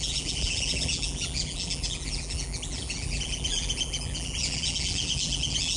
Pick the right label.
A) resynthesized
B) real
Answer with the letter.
A